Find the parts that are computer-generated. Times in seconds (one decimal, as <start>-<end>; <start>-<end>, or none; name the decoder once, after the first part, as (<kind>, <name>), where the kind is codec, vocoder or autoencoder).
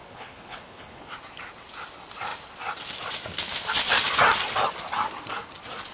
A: 0.0-1.1 (codec, HILCodec)